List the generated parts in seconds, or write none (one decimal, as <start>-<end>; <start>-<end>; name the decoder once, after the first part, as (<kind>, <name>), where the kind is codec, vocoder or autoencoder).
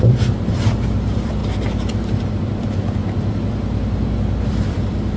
0.0-1.4 (vocoder, BigVGAN v2); 2.6-3.0; 4.4-5.2